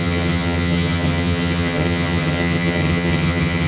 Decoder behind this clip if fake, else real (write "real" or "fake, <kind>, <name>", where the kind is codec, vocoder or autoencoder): fake, vocoder, HiFi-GAN